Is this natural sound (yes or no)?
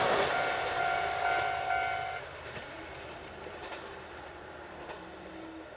no